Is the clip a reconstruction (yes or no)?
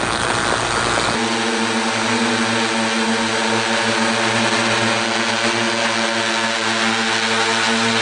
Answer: no